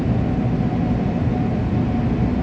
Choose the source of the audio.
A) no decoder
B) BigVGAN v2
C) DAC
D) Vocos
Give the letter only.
A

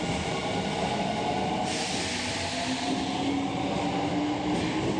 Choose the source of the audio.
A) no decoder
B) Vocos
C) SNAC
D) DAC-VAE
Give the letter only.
A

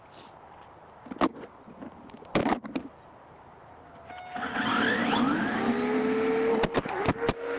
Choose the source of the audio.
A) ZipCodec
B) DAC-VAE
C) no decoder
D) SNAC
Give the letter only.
C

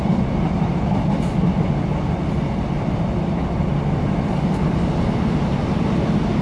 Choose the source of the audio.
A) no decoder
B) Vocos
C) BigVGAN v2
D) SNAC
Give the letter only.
A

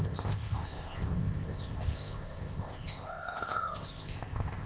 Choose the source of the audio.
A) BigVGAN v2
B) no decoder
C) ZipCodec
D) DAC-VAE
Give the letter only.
C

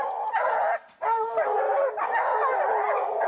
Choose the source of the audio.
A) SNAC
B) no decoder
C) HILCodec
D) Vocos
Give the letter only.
B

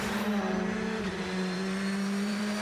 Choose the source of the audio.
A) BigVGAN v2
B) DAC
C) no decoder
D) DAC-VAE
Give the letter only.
A